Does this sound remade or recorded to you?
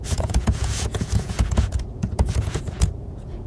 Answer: remade